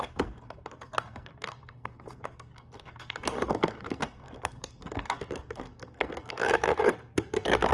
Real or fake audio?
fake